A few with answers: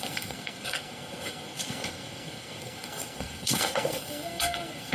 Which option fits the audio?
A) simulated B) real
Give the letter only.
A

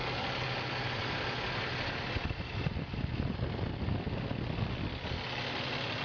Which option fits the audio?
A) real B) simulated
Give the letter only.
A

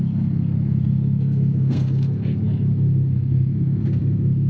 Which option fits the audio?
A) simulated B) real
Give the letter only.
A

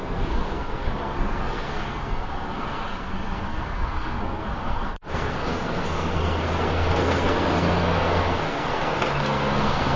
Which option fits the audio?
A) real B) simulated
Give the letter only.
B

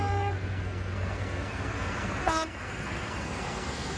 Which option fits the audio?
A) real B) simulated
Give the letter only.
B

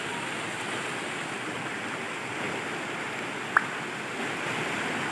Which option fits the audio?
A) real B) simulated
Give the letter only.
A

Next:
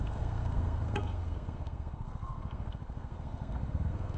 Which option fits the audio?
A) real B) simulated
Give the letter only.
B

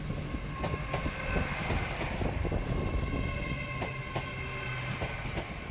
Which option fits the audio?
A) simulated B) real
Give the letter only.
B